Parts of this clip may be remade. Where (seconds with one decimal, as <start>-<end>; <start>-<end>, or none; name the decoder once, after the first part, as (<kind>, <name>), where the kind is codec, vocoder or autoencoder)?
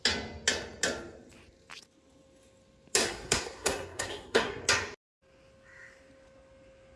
3.0-4.6 (codec, SNAC)